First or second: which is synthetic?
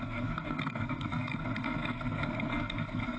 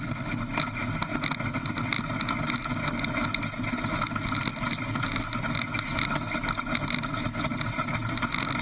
first